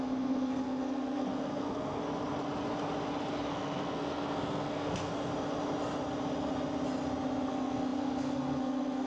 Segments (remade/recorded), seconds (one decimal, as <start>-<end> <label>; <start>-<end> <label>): 0.0-2.0 remade; 2.0-3.5 recorded; 3.5-5.1 remade; 5.1-7.5 recorded; 7.5-9.1 remade